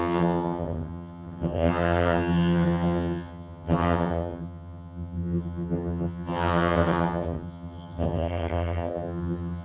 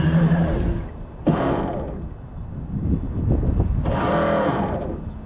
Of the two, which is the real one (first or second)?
second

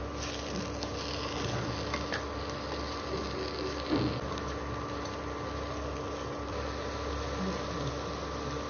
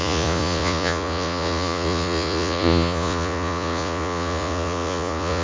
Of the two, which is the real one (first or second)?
first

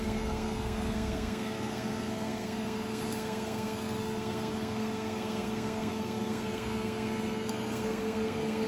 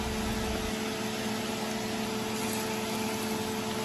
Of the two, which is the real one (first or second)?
second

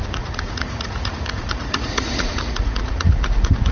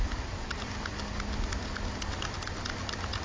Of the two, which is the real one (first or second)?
second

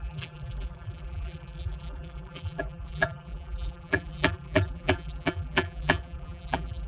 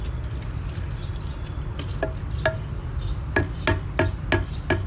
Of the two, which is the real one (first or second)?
second